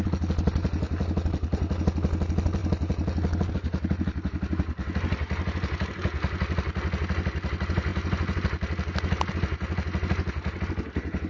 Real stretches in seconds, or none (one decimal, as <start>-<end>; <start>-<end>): 0.0-11.3